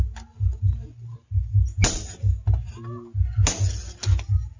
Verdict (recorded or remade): recorded